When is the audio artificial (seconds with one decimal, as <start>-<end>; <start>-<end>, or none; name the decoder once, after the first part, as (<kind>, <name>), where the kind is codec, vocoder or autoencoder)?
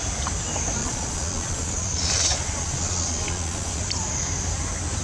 0.8-3.8 (vocoder, Vocos)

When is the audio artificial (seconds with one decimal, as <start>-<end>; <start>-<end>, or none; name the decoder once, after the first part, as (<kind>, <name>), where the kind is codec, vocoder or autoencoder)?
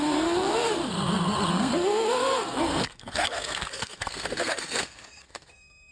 0.0-0.8 (codec, SNAC); 1.5-5.9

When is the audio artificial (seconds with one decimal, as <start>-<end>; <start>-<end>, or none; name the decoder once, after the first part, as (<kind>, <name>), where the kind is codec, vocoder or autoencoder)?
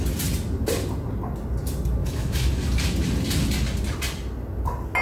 2.0-2.5 (autoencoder, DAC-VAE)